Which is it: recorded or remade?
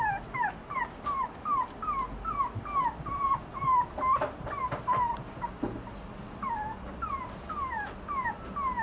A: recorded